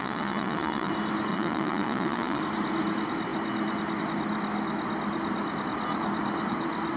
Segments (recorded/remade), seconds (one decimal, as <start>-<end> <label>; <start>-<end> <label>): 0.0-0.9 remade; 0.9-1.3 recorded; 1.3-2.4 remade; 2.4-7.0 recorded